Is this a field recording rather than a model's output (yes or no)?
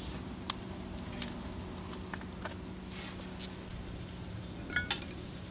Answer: yes